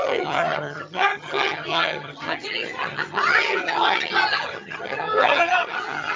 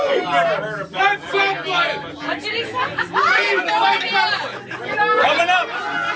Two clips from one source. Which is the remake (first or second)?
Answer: first